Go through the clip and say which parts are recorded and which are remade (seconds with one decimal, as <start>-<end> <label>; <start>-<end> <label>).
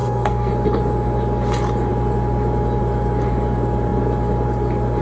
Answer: 0.0-0.5 remade; 0.5-5.0 recorded